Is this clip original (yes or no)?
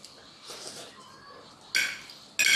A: yes